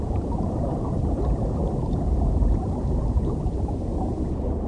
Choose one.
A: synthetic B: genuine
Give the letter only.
A